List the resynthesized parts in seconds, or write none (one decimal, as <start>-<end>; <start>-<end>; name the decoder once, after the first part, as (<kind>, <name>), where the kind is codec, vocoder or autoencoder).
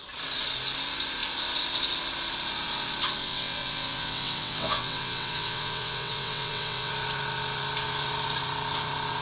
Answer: 3.2-6.9 (vocoder, WaveNeXt)